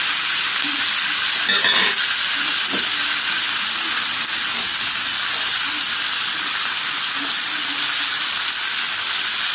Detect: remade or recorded recorded